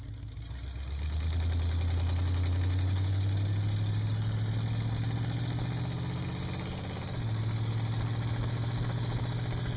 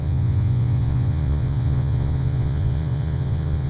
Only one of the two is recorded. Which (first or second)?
first